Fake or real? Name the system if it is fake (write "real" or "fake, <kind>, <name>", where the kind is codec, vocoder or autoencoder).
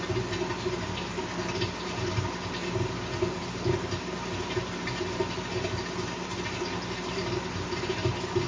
real